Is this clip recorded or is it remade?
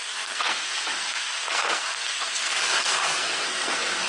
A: remade